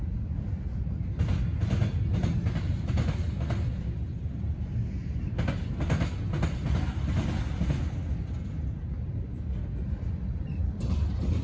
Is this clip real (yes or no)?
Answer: yes